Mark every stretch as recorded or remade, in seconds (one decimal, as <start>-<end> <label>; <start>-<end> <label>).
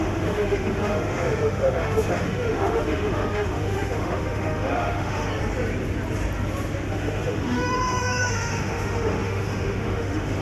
0.0-5.3 remade; 5.3-6.9 recorded; 6.9-10.4 remade